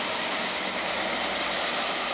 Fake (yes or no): no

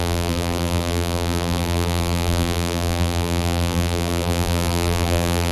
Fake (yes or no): yes